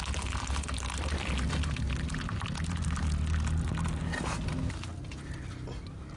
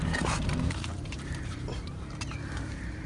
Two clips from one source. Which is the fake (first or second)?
second